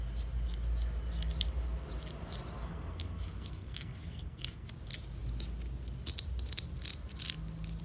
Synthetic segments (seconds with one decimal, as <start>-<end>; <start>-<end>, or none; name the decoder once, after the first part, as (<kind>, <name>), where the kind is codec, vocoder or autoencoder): 2.6-4.7 (codec, SNAC)